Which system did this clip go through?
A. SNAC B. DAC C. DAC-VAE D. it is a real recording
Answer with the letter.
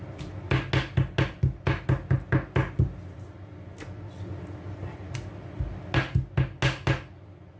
D